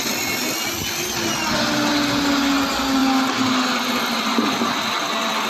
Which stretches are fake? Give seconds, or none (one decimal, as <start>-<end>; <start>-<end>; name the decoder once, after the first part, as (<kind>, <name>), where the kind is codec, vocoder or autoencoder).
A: none